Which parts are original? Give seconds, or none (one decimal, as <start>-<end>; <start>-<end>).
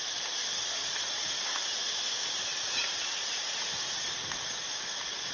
0.0-0.8; 1.4-2.5